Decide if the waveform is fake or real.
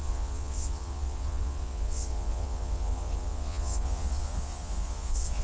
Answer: fake